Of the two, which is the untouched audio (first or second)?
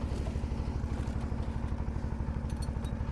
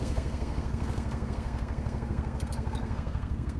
first